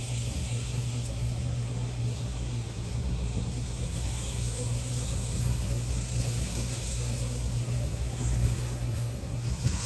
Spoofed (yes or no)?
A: yes